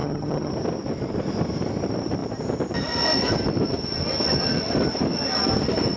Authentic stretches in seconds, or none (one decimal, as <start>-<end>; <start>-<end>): 0.5-6.0